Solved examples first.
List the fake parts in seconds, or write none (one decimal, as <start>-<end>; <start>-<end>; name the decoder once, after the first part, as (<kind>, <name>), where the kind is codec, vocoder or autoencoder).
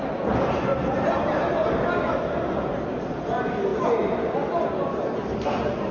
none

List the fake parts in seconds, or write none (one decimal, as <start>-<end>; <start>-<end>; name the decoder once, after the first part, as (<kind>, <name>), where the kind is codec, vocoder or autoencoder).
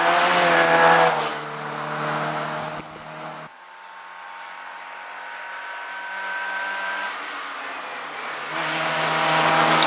none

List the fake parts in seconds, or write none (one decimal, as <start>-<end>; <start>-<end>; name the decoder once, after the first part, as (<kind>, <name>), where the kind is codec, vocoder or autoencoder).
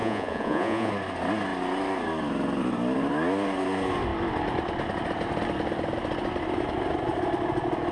0.0-0.9 (vocoder, Vocos)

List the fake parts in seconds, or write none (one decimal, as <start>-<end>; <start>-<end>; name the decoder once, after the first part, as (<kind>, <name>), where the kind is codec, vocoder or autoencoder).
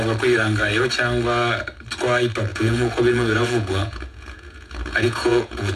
2.5-5.8 (vocoder, Vocos)